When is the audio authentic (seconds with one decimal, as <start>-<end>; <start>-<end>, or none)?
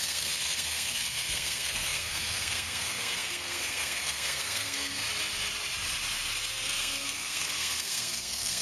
5.0-6.5